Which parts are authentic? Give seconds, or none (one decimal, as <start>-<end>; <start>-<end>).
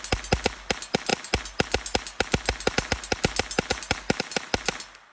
0.0-5.1